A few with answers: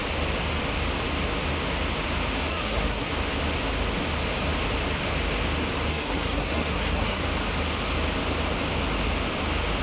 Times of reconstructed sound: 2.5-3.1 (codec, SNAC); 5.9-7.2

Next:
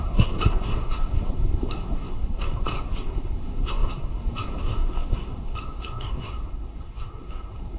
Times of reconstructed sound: 0.0-7.8 (codec, SNAC)

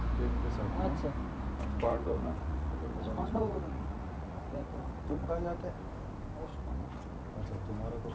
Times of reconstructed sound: 1.9-5.3 (vocoder, Vocos); 6.5-7.3

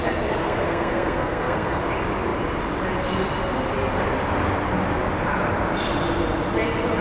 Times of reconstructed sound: 0.4-1.8 (codec, SNAC)

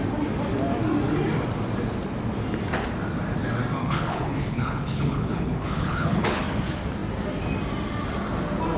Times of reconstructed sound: 3.8-6.4 (codec, HILCodec)

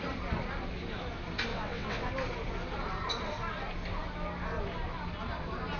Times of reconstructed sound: 1.5-2.1 (vocoder, WaveNeXt)

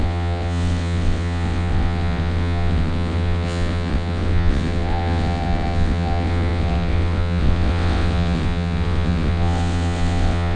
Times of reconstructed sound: 0.0-10.6 (vocoder, WaveNeXt)

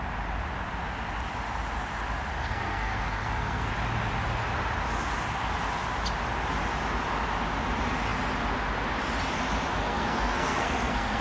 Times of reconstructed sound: 2.4-3.7 (codec, SNAC); 9.8-11.2